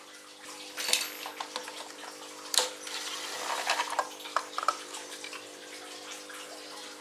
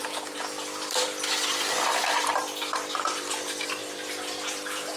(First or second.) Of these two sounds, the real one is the first